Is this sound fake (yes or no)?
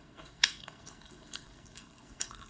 yes